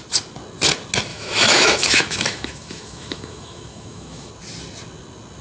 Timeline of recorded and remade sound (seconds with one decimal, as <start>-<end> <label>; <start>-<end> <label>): 0.0-1.1 recorded; 1.1-4.3 remade; 4.3-5.4 recorded